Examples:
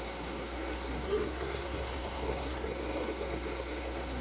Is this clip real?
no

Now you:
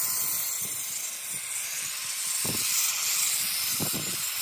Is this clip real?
yes